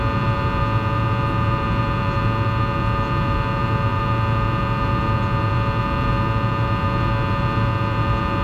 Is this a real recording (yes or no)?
no